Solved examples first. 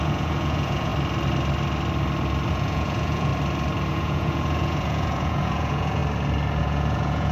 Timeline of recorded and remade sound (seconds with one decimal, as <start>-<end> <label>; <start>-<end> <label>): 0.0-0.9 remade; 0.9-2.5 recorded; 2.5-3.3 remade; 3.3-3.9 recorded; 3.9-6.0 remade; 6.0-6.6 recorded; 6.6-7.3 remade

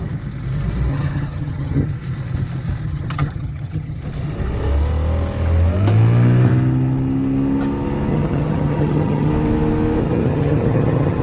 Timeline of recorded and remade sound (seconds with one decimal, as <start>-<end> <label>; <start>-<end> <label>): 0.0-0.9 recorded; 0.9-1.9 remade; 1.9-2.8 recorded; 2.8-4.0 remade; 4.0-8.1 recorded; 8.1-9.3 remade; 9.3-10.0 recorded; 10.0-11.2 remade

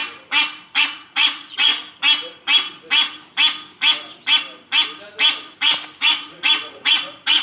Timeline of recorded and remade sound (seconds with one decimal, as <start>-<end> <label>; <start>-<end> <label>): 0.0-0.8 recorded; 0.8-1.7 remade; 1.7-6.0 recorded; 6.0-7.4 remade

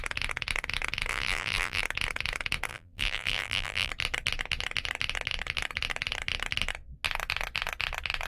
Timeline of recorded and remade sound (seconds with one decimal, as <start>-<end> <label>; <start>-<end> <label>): 0.0-1.1 recorded; 1.1-1.8 remade; 1.8-2.7 recorded; 2.7-3.9 remade; 3.9-8.3 recorded

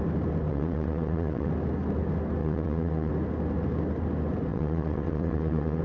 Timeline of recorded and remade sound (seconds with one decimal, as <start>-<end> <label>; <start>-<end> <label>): 0.0-0.5 recorded; 0.5-1.5 remade; 1.5-2.4 recorded; 2.4-3.1 remade; 3.1-4.5 recorded; 4.5-5.8 remade

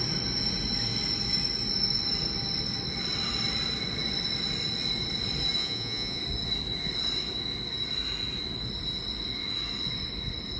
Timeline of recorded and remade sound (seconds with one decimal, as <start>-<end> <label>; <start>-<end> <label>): 0.0-5.6 recorded; 5.6-6.2 remade; 6.2-10.6 recorded